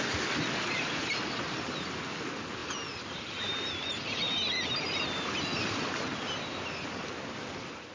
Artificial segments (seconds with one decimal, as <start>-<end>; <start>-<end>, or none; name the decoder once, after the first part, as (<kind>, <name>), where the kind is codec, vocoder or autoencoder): none